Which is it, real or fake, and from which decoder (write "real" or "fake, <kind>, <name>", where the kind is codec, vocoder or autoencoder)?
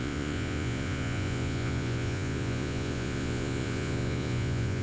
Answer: fake, vocoder, Vocos